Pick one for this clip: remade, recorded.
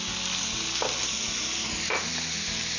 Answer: recorded